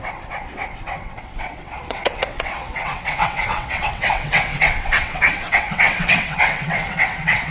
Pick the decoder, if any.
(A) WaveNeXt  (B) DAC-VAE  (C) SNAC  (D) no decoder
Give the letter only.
A